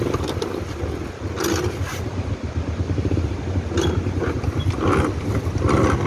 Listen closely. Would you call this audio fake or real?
real